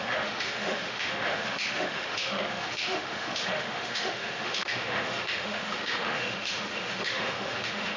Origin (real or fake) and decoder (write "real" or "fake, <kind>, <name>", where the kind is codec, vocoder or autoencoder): fake, autoencoder, DAC-VAE